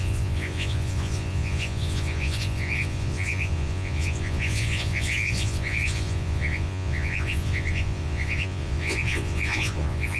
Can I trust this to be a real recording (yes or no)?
no